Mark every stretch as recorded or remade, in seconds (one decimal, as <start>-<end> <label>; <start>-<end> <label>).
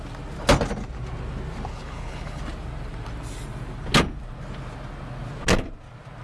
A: 0.0-1.7 recorded; 1.7-2.4 remade; 2.4-6.2 recorded